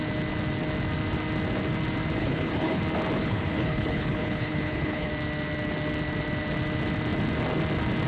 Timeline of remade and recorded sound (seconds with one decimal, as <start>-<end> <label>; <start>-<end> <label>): 0.0-2.2 recorded; 2.2-2.8 remade; 2.8-3.2 recorded; 3.2-5.1 remade; 5.1-8.1 recorded